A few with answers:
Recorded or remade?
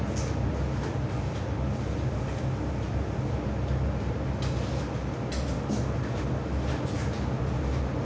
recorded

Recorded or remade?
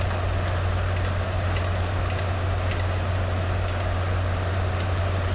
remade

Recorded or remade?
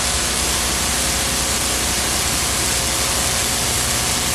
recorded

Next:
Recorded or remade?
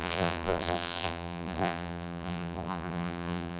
remade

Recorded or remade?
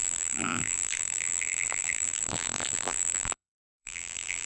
remade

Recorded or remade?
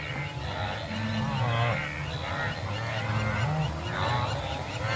recorded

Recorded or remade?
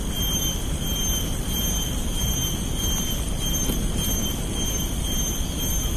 recorded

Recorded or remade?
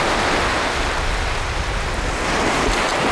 recorded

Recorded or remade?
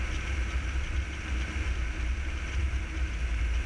recorded